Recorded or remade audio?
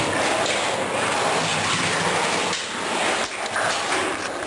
recorded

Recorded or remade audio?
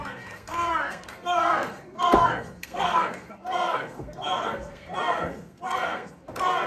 remade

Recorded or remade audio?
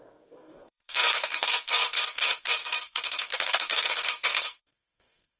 remade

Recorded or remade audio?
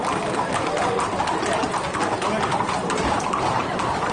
recorded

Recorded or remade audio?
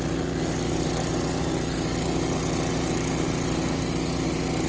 recorded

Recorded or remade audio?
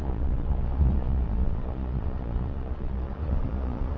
remade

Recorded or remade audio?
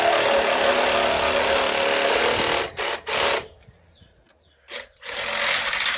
recorded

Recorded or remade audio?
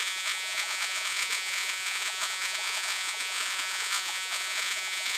remade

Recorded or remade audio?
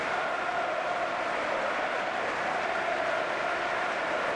recorded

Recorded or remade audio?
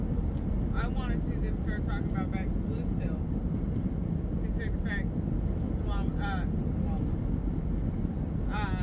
recorded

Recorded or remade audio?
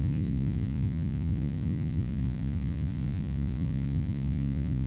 remade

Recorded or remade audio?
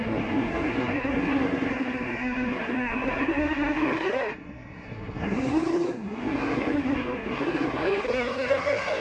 remade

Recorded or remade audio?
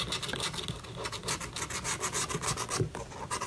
recorded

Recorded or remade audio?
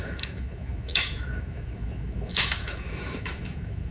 remade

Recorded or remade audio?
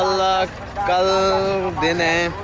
recorded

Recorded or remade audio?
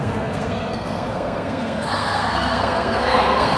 remade